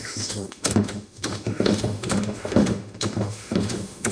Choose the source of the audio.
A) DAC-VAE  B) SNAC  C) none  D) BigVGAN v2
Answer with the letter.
A